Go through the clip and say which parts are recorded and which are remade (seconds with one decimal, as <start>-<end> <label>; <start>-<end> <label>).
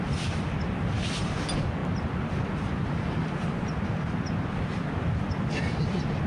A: 0.0-6.3 recorded